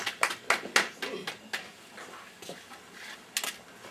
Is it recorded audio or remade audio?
recorded